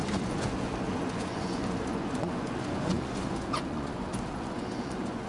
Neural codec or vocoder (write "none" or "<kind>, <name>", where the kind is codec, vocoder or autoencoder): vocoder, Vocos